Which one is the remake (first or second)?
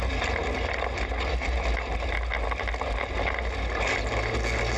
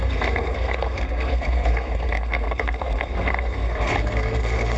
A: second